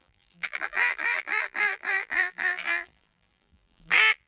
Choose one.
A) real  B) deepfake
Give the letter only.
B